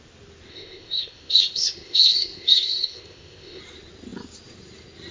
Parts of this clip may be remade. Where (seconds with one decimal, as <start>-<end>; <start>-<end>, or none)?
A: 0.5-3.6